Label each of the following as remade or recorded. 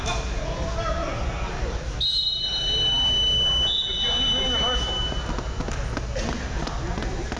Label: recorded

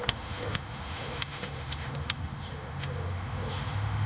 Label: remade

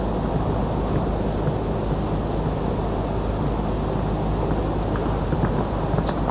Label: recorded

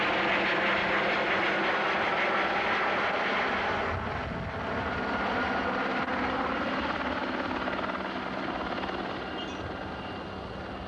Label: recorded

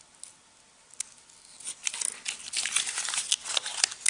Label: recorded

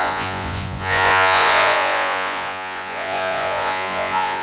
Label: remade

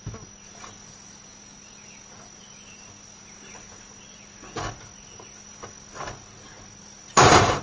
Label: recorded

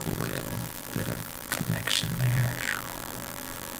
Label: remade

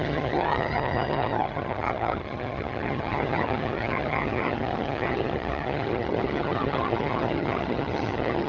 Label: remade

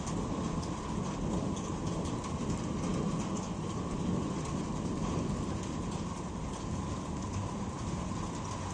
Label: recorded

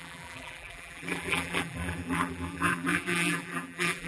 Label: remade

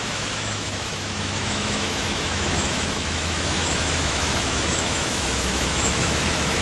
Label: remade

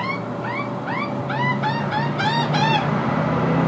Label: recorded